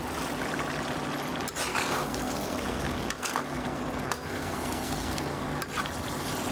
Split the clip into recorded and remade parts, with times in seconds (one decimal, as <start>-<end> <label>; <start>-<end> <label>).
0.0-1.7 recorded; 1.7-5.6 remade; 5.6-6.5 recorded